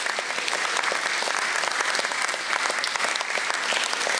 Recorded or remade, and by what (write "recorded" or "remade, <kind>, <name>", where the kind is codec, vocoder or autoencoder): recorded